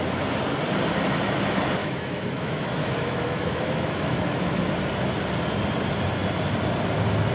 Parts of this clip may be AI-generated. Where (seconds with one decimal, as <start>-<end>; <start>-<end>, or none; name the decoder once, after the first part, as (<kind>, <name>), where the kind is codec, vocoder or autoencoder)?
1.8-4.7 (autoencoder, DAC-VAE)